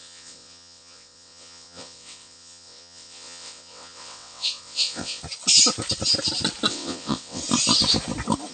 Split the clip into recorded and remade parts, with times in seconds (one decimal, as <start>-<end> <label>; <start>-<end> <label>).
0.0-5.2 remade; 5.2-6.7 recorded; 6.7-7.4 remade; 7.4-8.5 recorded